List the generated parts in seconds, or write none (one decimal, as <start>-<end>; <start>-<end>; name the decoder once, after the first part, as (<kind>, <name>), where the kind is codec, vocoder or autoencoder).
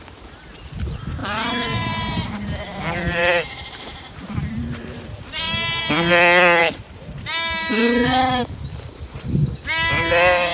1.2-5.8 (vocoder, BigVGAN v2); 6.6-8.4